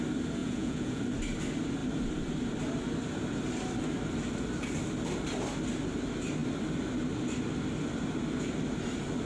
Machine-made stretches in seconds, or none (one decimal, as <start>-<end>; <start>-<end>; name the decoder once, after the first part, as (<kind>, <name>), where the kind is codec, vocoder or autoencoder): 0.4-1.0 (vocoder, Vocos)